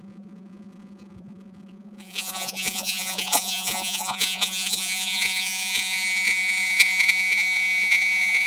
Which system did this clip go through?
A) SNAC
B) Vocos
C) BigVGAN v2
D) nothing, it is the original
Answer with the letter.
B